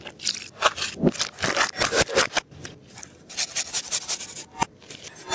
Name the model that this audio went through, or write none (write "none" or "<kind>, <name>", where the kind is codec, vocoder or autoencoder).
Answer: none